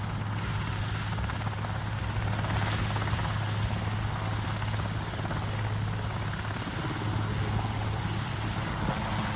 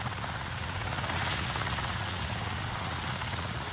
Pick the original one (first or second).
first